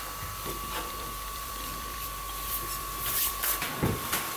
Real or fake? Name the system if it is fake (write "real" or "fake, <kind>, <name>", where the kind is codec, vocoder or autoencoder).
fake, vocoder, BigVGAN v2